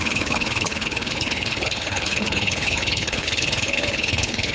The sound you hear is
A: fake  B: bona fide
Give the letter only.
A